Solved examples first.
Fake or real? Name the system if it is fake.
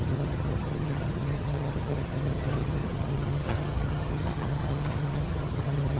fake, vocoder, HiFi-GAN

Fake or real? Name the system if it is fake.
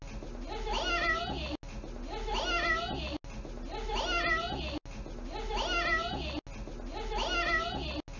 real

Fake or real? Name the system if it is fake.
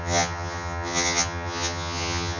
fake, vocoder, HiFi-GAN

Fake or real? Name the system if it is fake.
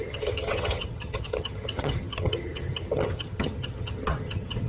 fake, vocoder, HiFi-GAN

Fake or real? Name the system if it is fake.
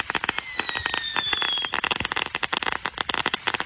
real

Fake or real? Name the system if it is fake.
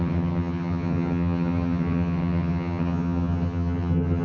fake, vocoder, HiFi-GAN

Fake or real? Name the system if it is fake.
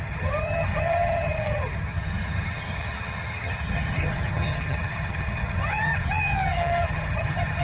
fake, vocoder, HiFi-GAN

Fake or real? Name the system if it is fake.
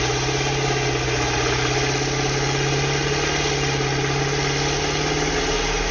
real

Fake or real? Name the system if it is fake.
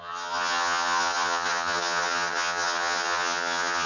fake, vocoder, HiFi-GAN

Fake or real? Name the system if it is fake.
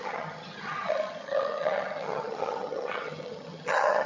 fake, vocoder, HiFi-GAN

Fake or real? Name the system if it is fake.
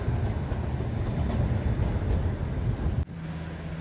real